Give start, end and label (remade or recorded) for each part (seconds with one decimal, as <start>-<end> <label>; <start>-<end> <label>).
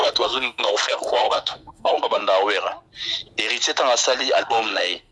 0.0-2.2 remade; 2.2-4.4 recorded; 4.4-5.1 remade